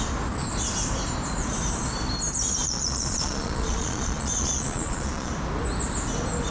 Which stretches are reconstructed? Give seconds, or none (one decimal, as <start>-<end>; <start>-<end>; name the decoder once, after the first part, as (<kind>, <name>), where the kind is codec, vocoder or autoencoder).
2.6-5.3 (vocoder, Vocos)